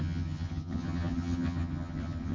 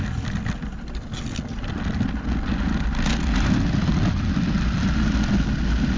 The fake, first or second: first